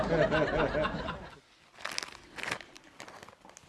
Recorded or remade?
recorded